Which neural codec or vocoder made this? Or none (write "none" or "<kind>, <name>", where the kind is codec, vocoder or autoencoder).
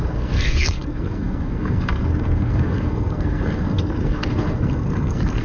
codec, SNAC